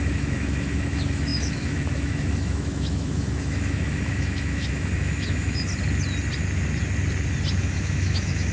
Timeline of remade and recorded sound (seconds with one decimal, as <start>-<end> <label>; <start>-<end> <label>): 0.0-5.7 remade; 5.7-7.6 recorded; 7.6-8.5 remade